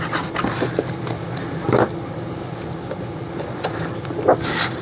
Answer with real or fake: real